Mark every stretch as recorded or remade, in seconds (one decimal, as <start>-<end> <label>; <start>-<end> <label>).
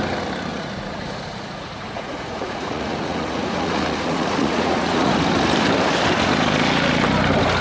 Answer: 0.0-0.5 recorded; 0.5-5.1 remade; 5.1-7.6 recorded